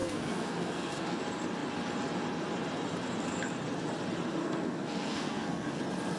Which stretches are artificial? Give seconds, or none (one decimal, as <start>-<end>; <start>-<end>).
0.0-1.2; 4.4-5.8